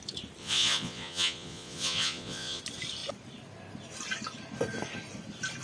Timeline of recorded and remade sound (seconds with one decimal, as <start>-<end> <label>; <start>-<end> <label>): 0.0-0.4 recorded; 0.4-2.6 remade; 2.6-5.6 recorded